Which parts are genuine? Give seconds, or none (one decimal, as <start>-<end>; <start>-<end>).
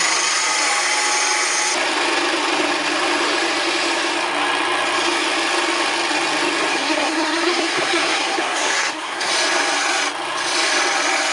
0.0-6.7; 9.3-11.3